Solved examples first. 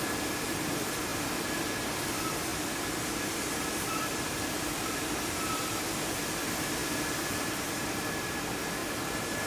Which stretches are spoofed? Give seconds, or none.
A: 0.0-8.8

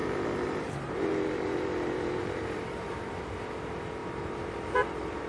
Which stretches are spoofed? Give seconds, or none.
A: 0.0-3.2; 4.0-5.3

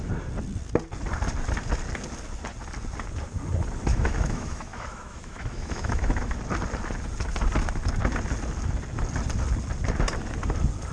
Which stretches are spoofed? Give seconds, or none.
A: 3.9-6.4